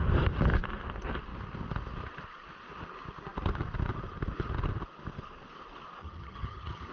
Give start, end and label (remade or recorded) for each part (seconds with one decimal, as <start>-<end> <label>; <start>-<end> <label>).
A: 0.0-6.0 recorded; 6.0-6.9 remade